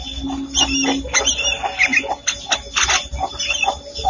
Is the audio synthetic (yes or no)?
no